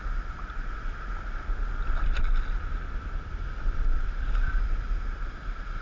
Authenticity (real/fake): real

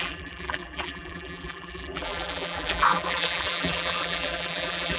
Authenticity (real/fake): fake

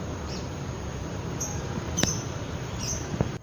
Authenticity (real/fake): fake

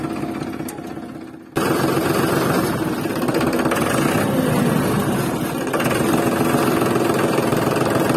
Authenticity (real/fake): real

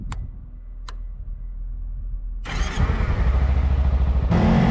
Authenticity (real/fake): real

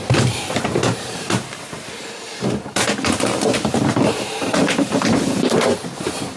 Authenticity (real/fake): fake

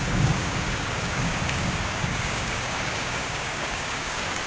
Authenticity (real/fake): fake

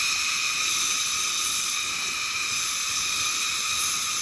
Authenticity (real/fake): fake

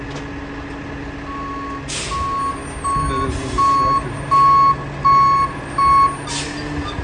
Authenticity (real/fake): real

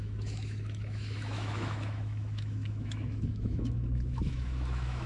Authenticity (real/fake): fake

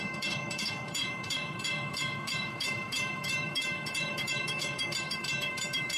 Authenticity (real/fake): fake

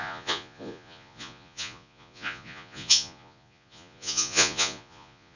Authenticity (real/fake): fake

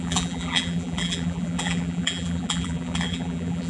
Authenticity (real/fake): fake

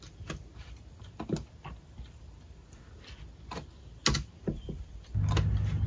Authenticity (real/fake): real